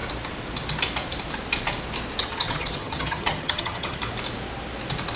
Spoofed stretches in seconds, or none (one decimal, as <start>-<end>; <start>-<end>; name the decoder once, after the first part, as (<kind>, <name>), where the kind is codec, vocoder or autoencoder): 2.2-4.0 (vocoder, HiFi-GAN)